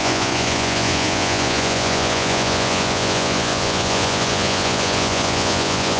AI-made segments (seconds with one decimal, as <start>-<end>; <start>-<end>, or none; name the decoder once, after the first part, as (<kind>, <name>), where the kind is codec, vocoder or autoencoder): 0.0-6.0 (vocoder, Vocos)